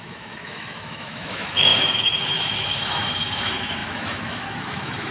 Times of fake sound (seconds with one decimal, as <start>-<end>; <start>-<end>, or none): 0.0-5.1